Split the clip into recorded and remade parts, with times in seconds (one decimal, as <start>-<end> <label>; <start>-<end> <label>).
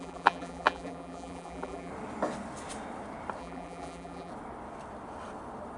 0.0-1.9 remade; 1.9-3.4 recorded; 3.4-4.3 remade; 4.3-5.8 recorded